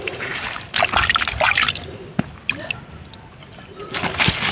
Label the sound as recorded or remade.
recorded